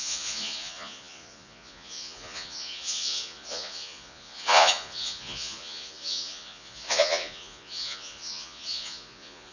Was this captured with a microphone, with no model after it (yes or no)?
no